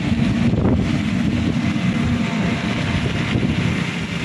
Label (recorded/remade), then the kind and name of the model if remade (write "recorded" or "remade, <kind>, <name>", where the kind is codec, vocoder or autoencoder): recorded